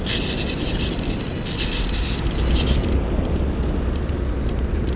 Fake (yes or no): no